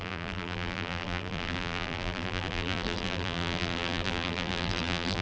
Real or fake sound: fake